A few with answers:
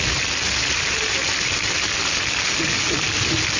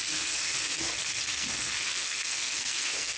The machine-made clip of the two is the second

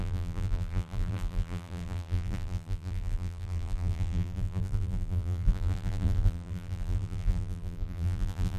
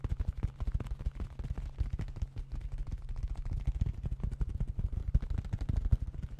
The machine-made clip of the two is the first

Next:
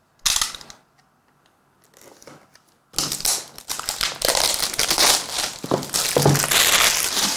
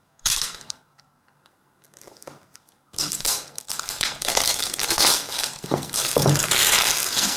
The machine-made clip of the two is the second